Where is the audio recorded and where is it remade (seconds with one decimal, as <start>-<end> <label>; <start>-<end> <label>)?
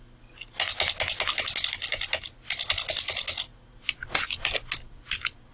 0.0-5.5 recorded